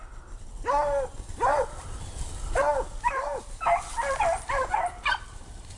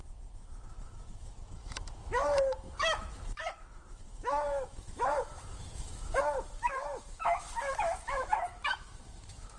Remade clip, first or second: second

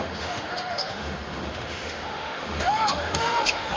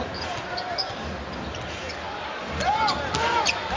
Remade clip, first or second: first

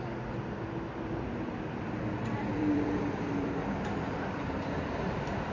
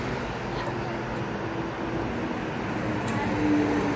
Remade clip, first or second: first